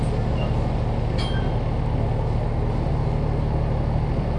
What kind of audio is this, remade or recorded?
recorded